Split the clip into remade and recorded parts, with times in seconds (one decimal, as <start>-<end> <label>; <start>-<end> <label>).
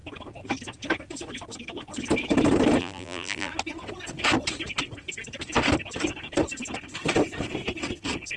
0.0-2.8 recorded; 2.8-3.5 remade; 3.5-8.4 recorded